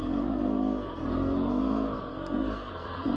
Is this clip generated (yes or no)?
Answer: yes